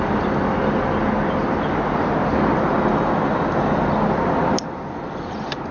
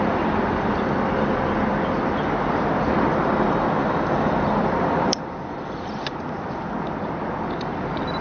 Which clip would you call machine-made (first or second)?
second